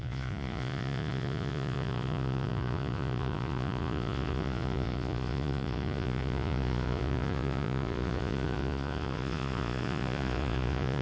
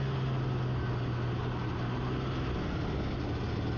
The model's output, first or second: first